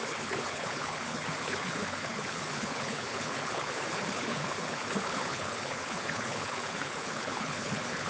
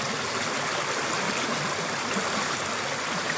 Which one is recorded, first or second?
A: second